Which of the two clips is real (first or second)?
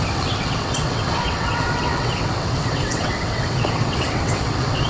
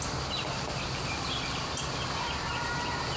second